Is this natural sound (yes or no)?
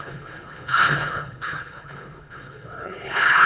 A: no